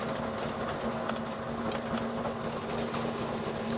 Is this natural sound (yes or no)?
yes